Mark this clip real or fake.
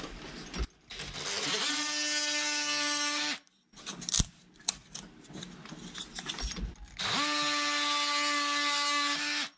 real